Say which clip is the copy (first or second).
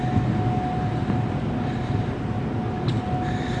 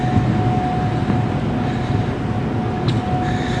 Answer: first